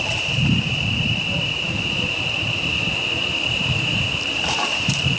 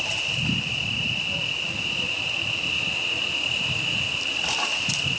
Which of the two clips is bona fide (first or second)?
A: second